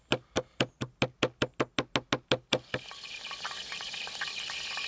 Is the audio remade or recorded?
recorded